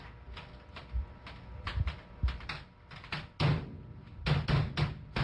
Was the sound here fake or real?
real